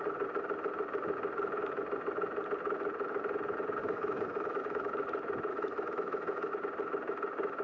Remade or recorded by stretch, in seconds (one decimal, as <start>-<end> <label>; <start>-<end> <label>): 0.0-3.8 recorded; 3.8-4.9 remade; 4.9-5.5 recorded; 5.5-6.5 remade; 6.5-7.6 recorded